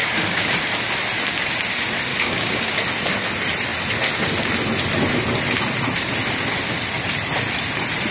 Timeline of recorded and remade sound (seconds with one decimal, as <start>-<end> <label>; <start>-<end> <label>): 0.0-0.5 remade; 0.5-2.1 recorded; 2.1-2.7 remade; 2.7-8.1 recorded